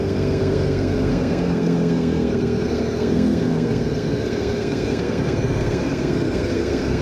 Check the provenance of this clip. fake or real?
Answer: fake